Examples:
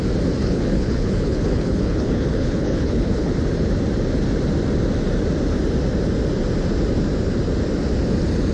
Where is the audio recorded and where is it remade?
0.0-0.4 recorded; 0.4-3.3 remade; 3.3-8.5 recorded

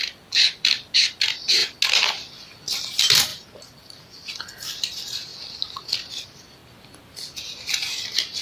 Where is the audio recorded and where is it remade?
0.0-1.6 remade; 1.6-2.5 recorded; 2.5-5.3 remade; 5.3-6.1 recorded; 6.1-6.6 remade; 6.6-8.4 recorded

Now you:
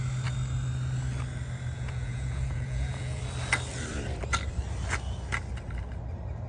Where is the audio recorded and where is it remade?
0.0-1.7 recorded; 1.7-3.2 remade; 3.2-6.5 recorded

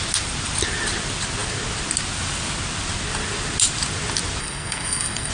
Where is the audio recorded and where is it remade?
0.0-4.4 recorded; 4.4-5.3 remade

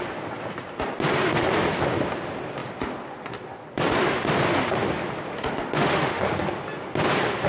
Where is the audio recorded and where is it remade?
0.0-5.6 recorded; 5.6-6.3 remade; 6.3-7.5 recorded

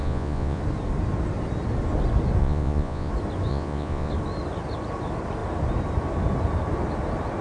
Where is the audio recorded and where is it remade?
0.0-0.6 remade; 0.6-2.4 recorded; 2.4-3.1 remade; 3.1-3.5 recorded; 3.5-4.1 remade; 4.1-7.4 recorded

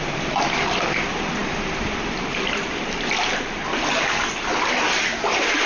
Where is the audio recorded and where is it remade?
0.0-5.7 remade

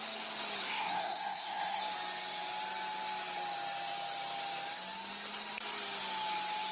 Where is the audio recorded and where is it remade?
0.0-0.6 recorded; 0.6-1.8 remade; 1.8-6.7 recorded